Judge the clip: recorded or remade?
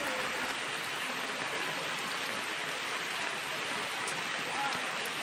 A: recorded